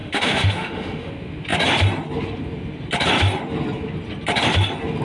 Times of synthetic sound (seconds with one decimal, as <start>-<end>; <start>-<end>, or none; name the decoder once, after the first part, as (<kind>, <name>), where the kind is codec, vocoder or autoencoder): 0.0-1.1 (autoencoder, DAC-VAE)